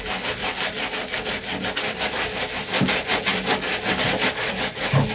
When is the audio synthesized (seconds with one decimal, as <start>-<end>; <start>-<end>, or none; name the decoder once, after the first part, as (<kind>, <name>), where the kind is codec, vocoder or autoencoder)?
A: none